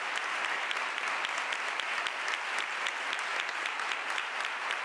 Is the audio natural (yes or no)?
yes